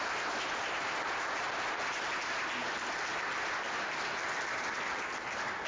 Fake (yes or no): no